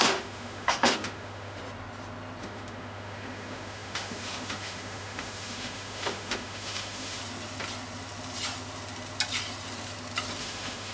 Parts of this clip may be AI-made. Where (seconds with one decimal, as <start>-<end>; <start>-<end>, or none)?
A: 0.0-1.6; 2.4-7.2; 10.4-10.9